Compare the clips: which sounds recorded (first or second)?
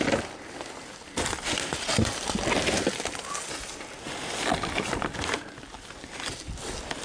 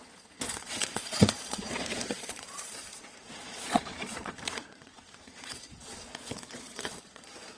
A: first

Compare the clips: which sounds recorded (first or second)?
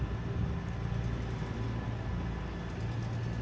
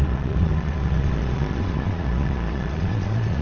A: first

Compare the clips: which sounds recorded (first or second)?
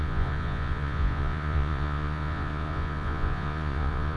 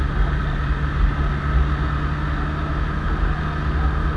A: second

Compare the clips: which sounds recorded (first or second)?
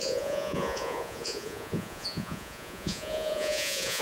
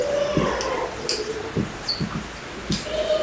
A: second